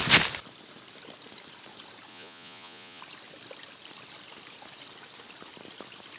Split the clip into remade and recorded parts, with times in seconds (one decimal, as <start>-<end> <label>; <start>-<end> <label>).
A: 0.0-2.1 recorded; 2.1-3.0 remade; 3.0-6.2 recorded